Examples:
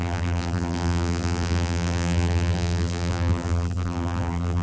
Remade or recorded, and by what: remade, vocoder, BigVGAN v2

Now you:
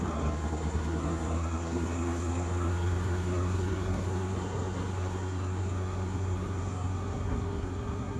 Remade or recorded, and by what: remade, codec, SNAC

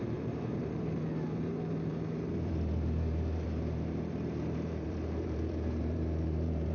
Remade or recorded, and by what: remade, vocoder, BigVGAN v2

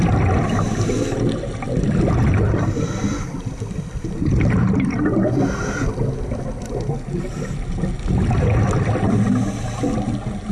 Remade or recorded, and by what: recorded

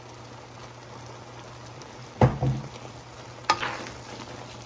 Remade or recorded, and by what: recorded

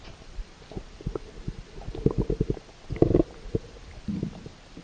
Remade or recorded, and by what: recorded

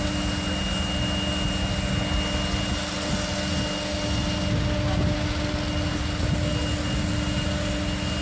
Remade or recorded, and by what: recorded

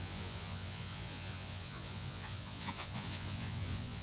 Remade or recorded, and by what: remade, vocoder, Vocos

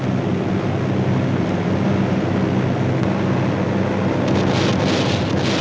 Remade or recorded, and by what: recorded